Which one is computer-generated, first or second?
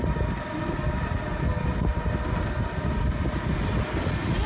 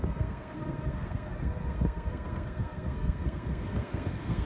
second